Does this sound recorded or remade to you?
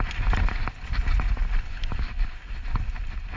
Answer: recorded